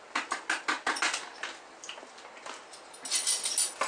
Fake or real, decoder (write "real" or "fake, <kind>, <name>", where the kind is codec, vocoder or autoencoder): real